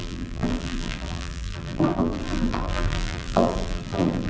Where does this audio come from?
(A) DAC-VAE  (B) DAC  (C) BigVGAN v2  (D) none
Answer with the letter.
C